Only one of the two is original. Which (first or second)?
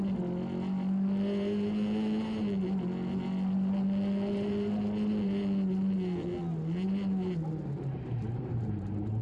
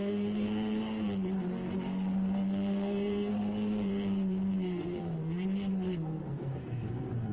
first